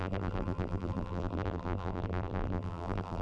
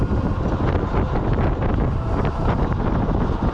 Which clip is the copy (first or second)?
first